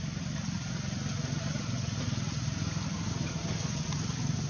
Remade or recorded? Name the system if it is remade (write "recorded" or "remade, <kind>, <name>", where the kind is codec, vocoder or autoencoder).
recorded